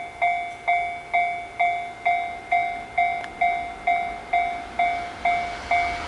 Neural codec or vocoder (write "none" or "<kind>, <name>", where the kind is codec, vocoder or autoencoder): none